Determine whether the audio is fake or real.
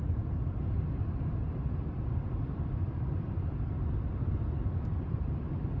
fake